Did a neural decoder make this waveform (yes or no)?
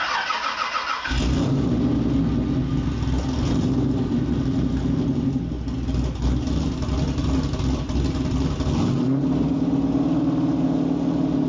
no